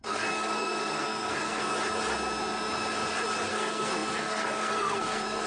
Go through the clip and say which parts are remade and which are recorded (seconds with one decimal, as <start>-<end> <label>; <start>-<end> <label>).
0.0-1.7 remade; 1.7-3.5 recorded; 3.5-5.5 remade

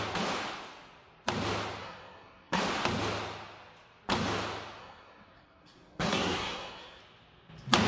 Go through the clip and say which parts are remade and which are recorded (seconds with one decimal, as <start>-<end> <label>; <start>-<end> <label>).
0.0-1.8 recorded; 1.8-2.6 remade; 2.6-4.8 recorded; 4.8-7.0 remade; 7.0-7.9 recorded

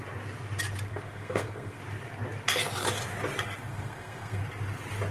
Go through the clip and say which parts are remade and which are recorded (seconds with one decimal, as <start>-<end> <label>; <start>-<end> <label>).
0.0-0.9 recorded; 0.9-1.8 remade; 1.8-3.7 recorded; 3.7-4.4 remade; 4.4-5.1 recorded

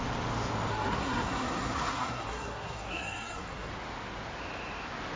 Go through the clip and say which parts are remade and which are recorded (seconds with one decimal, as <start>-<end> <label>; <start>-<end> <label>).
0.0-0.7 recorded; 0.7-3.7 remade; 3.7-5.2 recorded

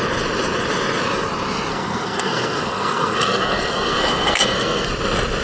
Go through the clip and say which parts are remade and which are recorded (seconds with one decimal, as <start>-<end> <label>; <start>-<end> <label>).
0.0-1.7 recorded; 1.7-4.9 remade; 4.9-5.4 recorded

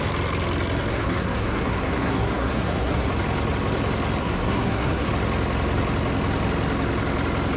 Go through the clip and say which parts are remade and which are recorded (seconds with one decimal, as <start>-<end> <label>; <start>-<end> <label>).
0.0-0.9 recorded; 0.9-3.1 remade; 3.1-4.2 recorded; 4.2-5.1 remade; 5.1-7.6 recorded